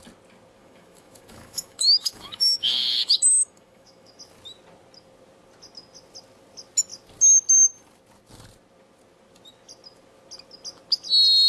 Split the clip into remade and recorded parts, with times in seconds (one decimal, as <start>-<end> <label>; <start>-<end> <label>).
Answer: 0.0-0.6 recorded; 0.6-4.2 remade; 4.2-11.5 recorded